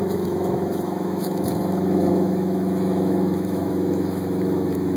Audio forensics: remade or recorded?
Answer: remade